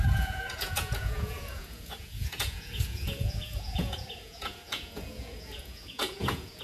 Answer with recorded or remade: remade